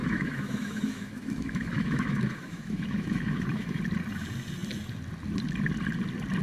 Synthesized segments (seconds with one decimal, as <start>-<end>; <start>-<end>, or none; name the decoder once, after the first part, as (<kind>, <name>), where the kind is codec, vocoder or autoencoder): 0.0-3.8 (autoencoder, DAC-VAE)